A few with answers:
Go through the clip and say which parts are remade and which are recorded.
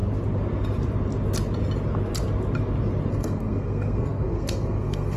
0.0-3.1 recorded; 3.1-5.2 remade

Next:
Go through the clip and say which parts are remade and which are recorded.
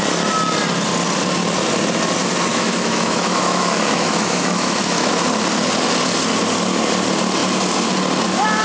0.0-2.5 recorded; 2.5-5.1 remade; 5.1-8.6 recorded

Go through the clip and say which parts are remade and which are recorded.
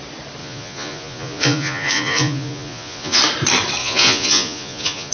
0.0-0.4 recorded; 0.4-3.2 remade; 3.2-3.8 recorded; 3.8-5.1 remade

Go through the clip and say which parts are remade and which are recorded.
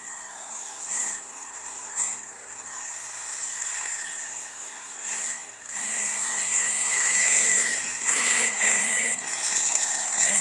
0.0-10.4 remade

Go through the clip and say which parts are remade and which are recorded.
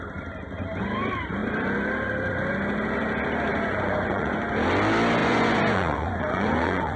0.0-3.5 recorded; 3.5-4.5 remade; 4.5-5.2 recorded; 5.2-7.0 remade